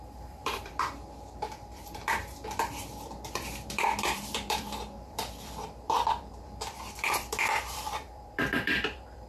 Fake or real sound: fake